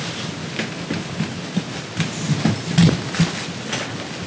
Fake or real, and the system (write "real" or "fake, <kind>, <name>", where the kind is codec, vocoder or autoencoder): real